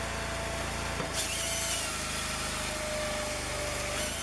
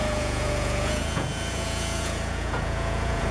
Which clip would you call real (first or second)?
first